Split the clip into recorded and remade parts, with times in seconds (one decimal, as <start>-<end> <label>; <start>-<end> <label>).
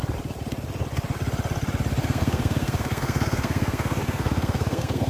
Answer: 0.0-2.0 recorded; 2.0-5.1 remade